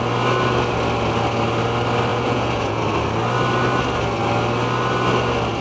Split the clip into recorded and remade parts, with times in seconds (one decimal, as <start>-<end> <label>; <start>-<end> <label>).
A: 0.0-2.1 recorded; 2.1-2.8 remade; 2.8-5.6 recorded